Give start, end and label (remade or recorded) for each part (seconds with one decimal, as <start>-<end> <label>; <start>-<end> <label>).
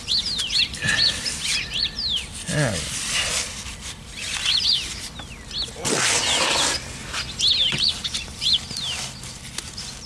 0.0-10.1 recorded